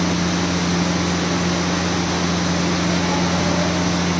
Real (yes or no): yes